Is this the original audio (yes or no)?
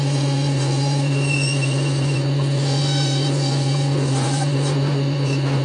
no